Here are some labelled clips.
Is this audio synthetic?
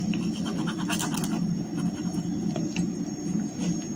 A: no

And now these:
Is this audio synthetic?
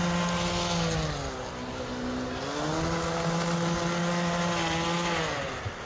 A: no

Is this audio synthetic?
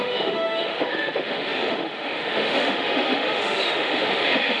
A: yes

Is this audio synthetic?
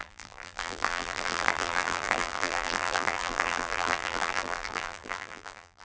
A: yes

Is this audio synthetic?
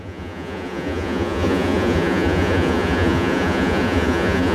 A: yes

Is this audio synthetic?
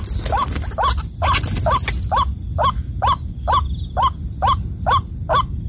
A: no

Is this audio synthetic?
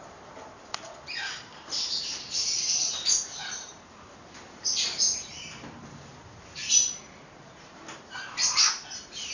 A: yes